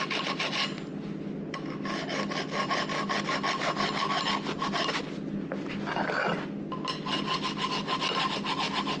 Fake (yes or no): no